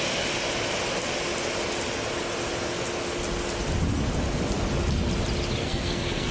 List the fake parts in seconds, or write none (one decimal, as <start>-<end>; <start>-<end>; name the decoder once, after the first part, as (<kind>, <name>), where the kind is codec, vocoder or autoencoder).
5.6-6.3 (codec, SNAC)

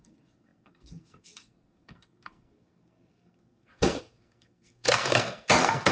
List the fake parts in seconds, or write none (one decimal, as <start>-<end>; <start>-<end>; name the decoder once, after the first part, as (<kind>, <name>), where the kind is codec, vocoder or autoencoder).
0.0-5.9 (codec, SNAC)

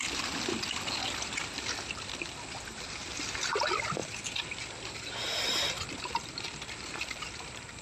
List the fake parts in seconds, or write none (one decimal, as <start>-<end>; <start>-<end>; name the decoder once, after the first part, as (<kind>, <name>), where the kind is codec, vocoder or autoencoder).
none

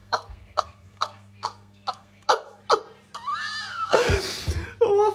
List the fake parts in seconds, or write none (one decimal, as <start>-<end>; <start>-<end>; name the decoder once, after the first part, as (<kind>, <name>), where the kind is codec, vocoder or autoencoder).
0.0-2.6 (codec, SNAC); 3.7-4.4

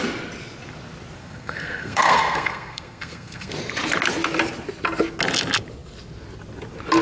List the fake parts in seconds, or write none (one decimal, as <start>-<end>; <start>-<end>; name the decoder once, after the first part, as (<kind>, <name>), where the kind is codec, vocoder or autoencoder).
1.2-3.5 (codec, SNAC)

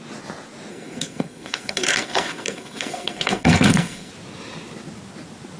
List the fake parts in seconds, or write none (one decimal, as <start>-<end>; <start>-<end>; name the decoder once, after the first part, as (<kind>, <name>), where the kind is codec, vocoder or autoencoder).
0.7-4.1 (codec, SNAC)

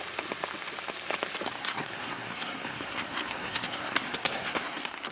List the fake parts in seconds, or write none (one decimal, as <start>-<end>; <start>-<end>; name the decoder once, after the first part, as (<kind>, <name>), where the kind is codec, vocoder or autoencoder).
1.6-5.1 (codec, SNAC)